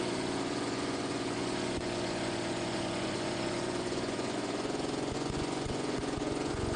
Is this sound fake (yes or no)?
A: yes